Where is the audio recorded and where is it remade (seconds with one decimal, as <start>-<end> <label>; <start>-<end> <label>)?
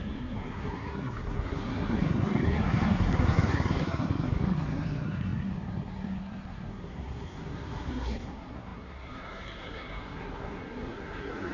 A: 0.0-11.5 remade